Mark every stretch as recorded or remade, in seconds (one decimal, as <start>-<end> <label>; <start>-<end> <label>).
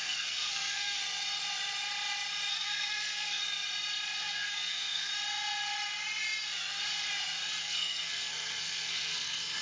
0.0-1.0 remade; 1.0-2.5 recorded; 2.5-3.4 remade; 3.4-4.2 recorded; 4.2-5.1 remade; 5.1-7.6 recorded; 7.6-9.6 remade